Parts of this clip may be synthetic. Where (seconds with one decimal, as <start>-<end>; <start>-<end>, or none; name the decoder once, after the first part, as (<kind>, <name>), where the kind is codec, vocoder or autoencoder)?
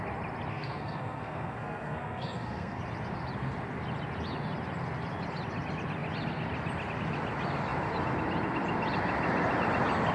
0.5-2.8 (codec, SNAC)